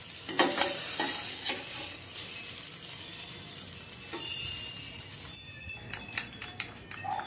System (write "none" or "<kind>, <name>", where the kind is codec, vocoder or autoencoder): none